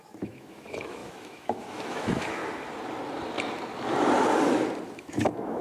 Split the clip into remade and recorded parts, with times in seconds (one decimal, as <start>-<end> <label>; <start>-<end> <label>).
0.0-2.4 remade; 2.4-5.0 recorded; 5.0-5.6 remade

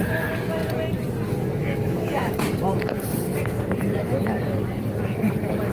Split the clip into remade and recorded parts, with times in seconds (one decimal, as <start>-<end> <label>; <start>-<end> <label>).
0.0-1.6 recorded; 1.6-2.4 remade; 2.4-5.7 recorded